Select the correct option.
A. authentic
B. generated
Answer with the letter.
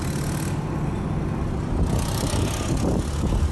A